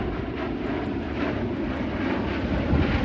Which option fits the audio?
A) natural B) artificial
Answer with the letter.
A